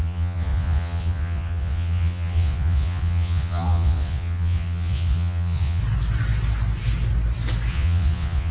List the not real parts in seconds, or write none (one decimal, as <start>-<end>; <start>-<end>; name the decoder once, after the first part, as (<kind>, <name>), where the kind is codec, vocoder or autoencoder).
0.0-5.8 (vocoder, Vocos); 7.7-8.5